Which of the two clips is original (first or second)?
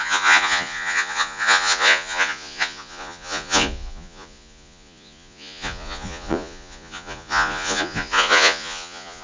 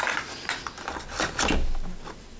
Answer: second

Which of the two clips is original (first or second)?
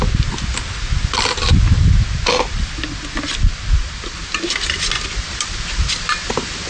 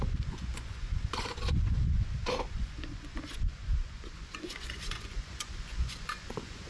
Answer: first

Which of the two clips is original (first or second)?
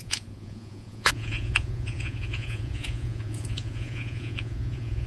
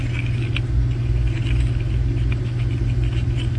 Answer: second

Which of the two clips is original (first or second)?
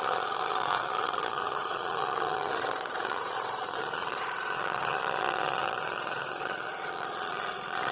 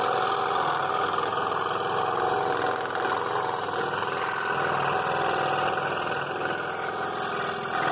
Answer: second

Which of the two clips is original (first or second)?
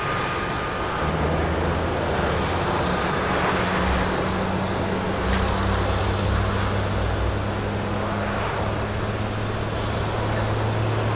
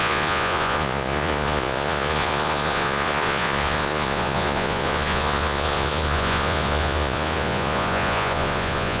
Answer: first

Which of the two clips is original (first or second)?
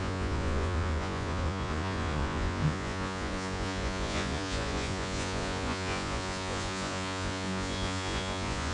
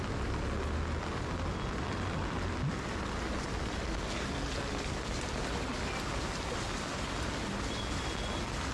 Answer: second